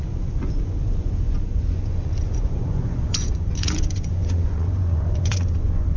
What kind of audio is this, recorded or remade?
remade